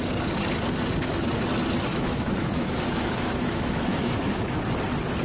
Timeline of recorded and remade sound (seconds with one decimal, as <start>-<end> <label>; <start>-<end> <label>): 0.0-1.9 recorded; 1.9-4.6 remade; 4.6-5.2 recorded